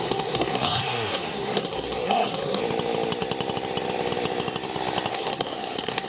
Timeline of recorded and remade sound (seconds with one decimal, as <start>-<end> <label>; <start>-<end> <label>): 0.0-2.6 remade; 2.6-5.1 recorded; 5.1-6.1 remade